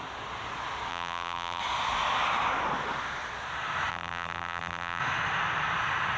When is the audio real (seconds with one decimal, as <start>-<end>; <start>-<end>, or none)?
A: 0.0-0.9; 1.6-3.9; 5.0-6.2